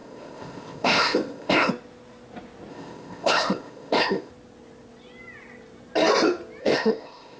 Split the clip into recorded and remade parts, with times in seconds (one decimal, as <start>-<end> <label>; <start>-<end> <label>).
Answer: 0.0-1.7 remade; 1.7-2.7 recorded; 2.7-4.3 remade; 4.3-6.6 recorded; 6.6-7.4 remade